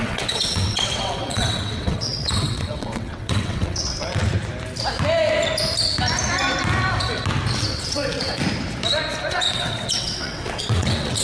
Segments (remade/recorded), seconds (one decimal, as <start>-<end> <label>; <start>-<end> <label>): 0.0-4.2 remade; 4.2-7.6 recorded; 7.6-8.4 remade; 8.4-9.3 recorded; 9.3-11.2 remade